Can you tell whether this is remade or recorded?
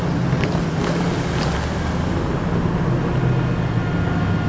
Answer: recorded